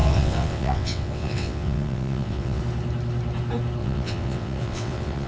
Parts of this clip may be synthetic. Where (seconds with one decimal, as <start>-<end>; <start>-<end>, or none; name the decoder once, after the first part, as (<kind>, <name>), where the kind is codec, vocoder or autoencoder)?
0.0-2.6 (vocoder, WaveNeXt); 3.8-5.3